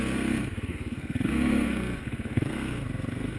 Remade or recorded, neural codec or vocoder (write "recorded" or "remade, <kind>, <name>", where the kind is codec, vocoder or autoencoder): remade, codec, SNAC